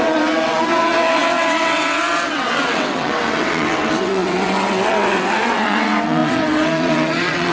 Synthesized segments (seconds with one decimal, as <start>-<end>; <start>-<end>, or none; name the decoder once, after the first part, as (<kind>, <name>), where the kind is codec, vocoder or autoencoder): 0.0-7.5 (vocoder, WaveNeXt)